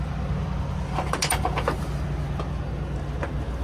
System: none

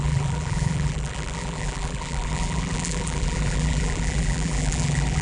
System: vocoder, BigVGAN v2